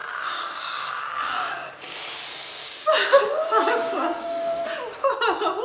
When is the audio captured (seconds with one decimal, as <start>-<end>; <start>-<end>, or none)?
1.7-2.6; 4.6-5.6